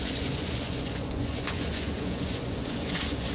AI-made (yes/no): yes